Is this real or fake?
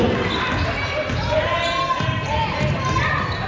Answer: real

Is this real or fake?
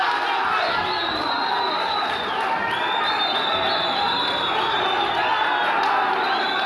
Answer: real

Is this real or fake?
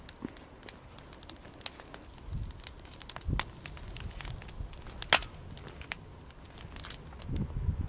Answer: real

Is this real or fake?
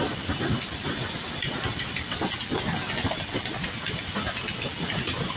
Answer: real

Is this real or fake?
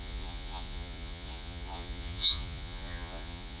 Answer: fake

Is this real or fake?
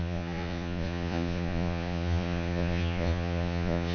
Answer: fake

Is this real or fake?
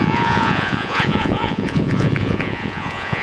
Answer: fake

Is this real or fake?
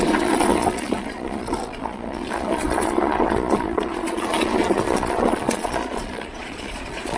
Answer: fake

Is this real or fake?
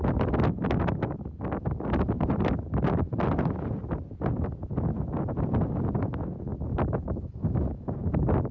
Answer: real